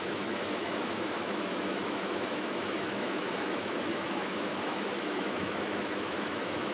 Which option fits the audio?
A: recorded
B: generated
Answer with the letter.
B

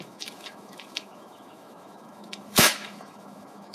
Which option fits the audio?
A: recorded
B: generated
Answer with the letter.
B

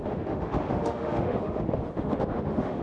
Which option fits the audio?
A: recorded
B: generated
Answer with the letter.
B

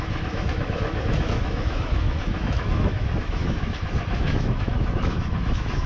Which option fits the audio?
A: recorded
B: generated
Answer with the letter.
B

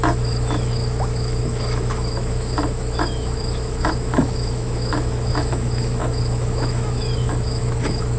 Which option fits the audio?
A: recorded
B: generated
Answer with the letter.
B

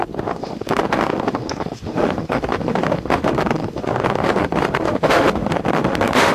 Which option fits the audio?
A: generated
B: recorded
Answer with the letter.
A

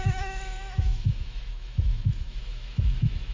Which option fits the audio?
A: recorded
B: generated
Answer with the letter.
B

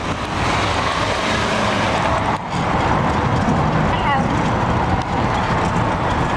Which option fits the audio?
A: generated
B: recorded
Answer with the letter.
B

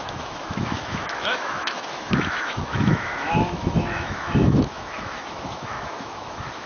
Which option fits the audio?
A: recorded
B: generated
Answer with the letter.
B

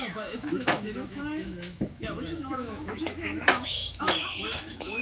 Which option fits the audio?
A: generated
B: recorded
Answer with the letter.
A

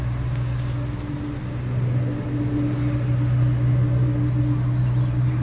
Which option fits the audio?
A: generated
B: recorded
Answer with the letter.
B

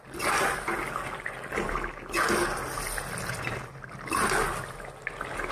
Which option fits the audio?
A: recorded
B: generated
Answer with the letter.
A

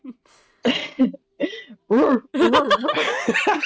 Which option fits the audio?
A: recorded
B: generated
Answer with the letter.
A